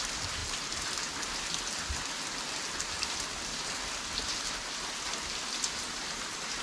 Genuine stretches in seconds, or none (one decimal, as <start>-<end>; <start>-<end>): 0.0-6.6